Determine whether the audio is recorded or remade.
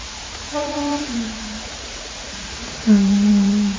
remade